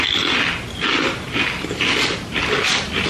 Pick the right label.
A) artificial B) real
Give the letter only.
B